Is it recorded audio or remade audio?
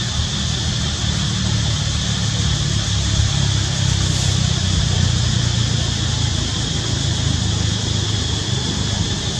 recorded